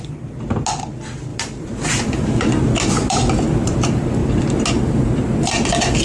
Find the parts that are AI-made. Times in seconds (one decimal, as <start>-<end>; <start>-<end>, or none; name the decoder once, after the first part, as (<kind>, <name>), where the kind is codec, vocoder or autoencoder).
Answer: 1.3-1.9 (vocoder, BigVGAN v2)